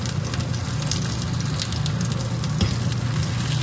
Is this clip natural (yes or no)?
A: yes